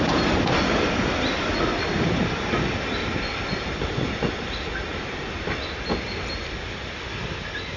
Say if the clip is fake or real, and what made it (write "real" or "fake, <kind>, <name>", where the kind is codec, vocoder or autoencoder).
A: real